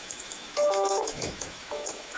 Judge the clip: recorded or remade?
remade